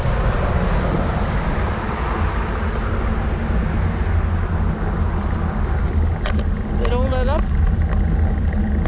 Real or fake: real